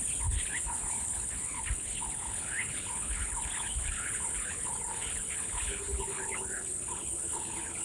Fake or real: fake